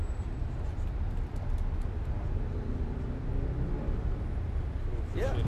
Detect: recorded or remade recorded